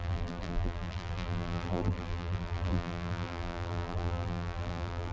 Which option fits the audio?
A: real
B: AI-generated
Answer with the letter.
B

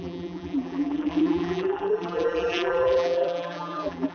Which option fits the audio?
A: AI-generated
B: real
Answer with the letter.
A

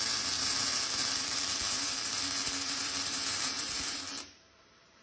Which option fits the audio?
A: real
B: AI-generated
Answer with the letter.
B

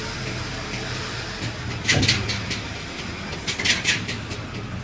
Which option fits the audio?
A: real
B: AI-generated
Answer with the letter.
B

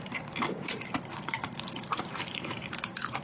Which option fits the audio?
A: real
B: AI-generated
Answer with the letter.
B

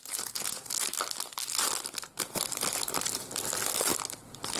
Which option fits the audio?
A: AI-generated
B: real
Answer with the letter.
B